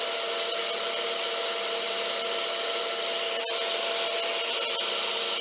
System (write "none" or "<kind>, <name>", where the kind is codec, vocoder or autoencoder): none